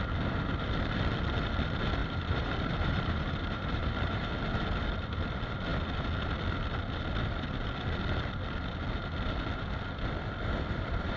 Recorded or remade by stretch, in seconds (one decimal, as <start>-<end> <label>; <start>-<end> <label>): 0.0-2.0 recorded; 2.0-4.3 remade; 4.3-11.2 recorded